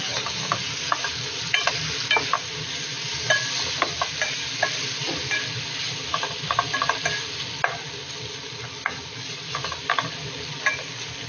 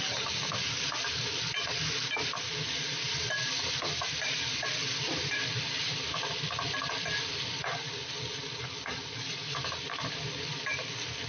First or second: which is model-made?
second